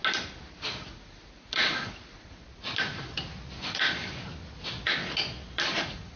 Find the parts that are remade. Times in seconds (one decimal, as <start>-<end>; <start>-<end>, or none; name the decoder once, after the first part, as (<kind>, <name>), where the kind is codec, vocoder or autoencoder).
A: 0.6-2.4 (vocoder, Vocos); 3.6-4.0; 5.7-6.2